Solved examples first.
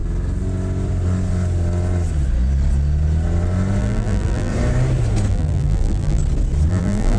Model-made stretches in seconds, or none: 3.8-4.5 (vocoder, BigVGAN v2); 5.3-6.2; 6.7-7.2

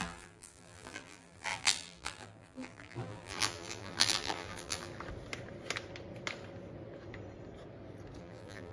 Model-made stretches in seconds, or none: 0.0-4.9 (vocoder, BigVGAN v2); 8.2-8.7

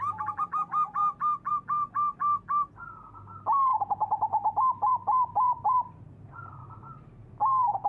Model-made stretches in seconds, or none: 3.7-7.4 (vocoder, BigVGAN v2)

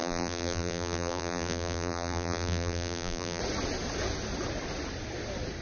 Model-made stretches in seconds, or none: 0.0-3.4 (vocoder, BigVGAN v2)